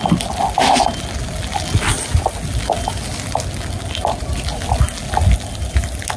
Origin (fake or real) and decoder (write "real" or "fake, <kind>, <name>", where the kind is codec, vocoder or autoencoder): real